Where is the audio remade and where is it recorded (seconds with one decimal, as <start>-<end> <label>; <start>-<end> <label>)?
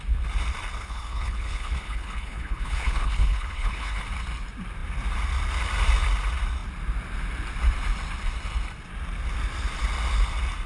0.0-0.8 recorded; 0.8-4.0 remade; 4.0-10.7 recorded